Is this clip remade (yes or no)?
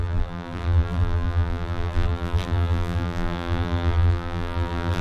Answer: yes